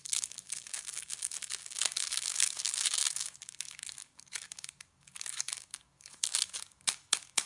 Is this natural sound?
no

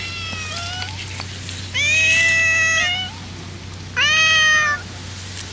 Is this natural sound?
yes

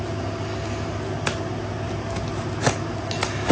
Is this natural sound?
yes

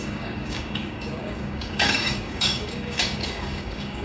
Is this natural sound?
no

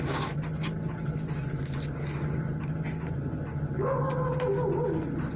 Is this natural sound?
yes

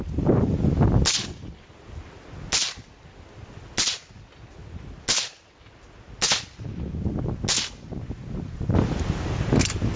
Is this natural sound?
yes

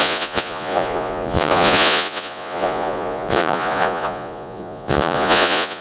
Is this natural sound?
no